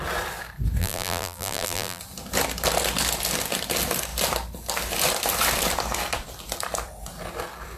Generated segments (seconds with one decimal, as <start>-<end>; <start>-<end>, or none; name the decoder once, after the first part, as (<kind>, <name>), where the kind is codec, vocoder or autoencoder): 0.8-2.0 (vocoder, BigVGAN v2)